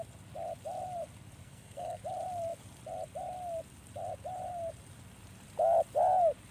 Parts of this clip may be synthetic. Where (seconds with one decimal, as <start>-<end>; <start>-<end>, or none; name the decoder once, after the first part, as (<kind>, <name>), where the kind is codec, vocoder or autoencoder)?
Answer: 1.4-2.0 (codec, SNAC)